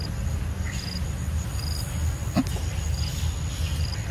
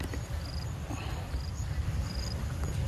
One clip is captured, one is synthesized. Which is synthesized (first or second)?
second